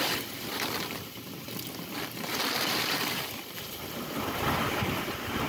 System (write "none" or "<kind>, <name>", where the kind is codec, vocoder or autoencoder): vocoder, BigVGAN v2